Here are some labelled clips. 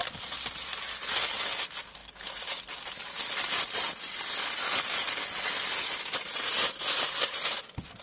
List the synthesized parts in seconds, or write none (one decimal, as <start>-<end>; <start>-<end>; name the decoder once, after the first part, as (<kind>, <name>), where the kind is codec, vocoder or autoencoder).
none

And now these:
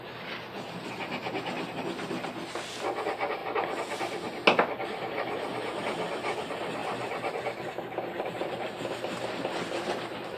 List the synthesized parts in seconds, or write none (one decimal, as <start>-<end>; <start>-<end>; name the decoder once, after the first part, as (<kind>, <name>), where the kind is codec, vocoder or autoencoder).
none

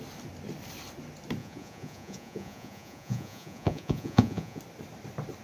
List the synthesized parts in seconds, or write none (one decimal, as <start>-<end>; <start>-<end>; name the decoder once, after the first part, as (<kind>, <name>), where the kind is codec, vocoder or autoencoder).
1.4-4.6 (vocoder, Vocos)

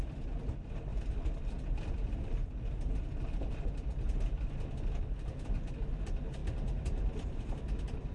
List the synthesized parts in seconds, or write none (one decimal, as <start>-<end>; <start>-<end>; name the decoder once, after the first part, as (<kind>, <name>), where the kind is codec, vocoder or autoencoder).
0.0-8.1 (vocoder, BigVGAN v2)